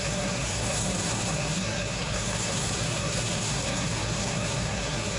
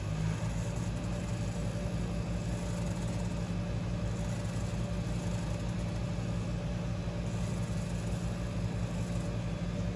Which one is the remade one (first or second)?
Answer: first